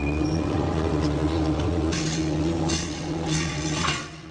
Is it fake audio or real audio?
fake